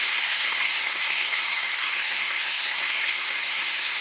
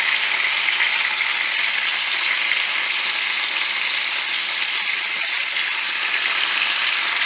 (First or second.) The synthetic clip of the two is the first